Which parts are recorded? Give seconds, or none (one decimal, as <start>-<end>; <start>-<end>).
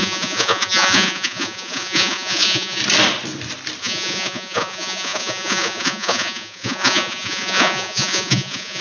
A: 2.8-3.8